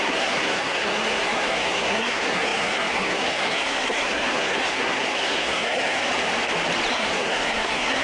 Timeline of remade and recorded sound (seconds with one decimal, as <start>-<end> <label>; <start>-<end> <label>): 0.0-6.1 remade; 6.1-6.9 recorded; 6.9-8.0 remade